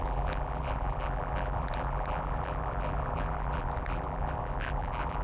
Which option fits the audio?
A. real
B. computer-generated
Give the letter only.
B